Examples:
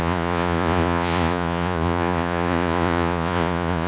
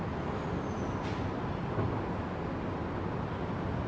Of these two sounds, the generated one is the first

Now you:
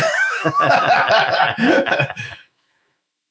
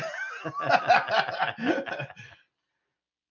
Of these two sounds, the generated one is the first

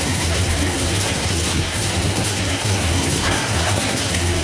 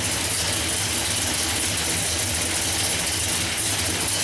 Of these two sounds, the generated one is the first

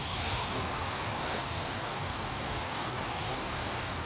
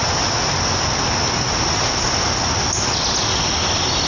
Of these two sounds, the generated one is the first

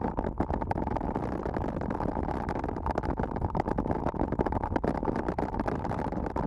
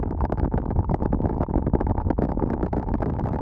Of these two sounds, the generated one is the second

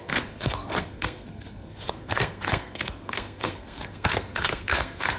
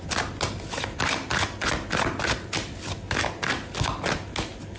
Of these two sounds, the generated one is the first